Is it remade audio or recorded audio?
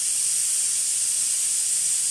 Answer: recorded